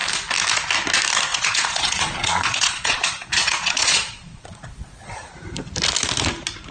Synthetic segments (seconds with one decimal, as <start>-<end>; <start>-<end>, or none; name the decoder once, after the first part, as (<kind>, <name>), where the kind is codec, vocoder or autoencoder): 1.3-5.3 (vocoder, Vocos)